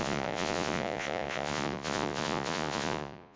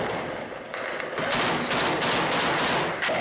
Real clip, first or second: second